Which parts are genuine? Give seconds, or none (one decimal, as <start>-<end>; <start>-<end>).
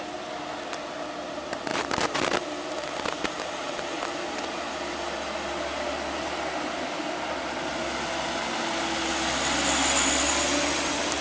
0.0-1.7; 4.2-11.2